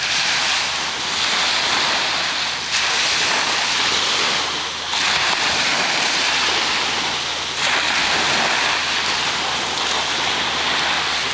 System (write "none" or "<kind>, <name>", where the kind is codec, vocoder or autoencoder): none